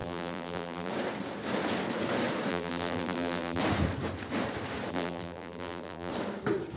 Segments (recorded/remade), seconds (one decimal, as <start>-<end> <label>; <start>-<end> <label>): 0.0-0.9 remade; 0.9-2.5 recorded; 2.5-3.6 remade; 3.6-4.9 recorded; 4.9-6.1 remade; 6.1-6.8 recorded